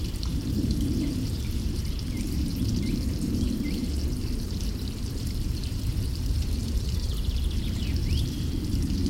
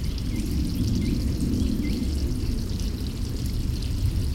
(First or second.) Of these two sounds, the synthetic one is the first